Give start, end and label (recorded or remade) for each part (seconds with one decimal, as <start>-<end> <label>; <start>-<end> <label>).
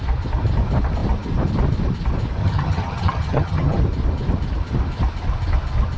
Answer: 0.0-2.4 recorded; 2.4-3.8 remade; 3.8-6.0 recorded